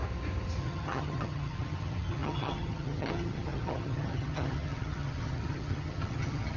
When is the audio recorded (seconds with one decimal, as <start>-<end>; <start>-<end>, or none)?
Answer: 0.0-0.6